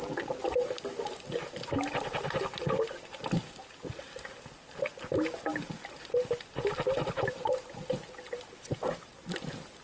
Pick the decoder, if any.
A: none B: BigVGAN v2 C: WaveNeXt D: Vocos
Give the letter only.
A